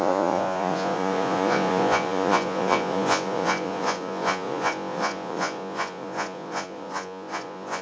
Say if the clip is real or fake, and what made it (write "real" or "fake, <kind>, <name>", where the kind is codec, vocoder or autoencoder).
fake, vocoder, Vocos